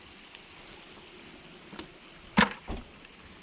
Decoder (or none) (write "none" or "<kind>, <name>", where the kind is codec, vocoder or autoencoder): none